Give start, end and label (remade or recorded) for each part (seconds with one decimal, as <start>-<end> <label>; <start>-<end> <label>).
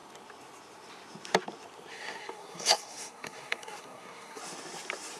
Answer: 0.0-1.9 recorded; 1.9-4.4 remade; 4.4-5.2 recorded